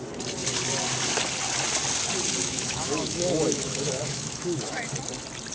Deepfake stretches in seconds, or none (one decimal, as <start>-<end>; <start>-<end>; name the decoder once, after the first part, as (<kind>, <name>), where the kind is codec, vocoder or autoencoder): 2.4-4.9 (autoencoder, DAC-VAE)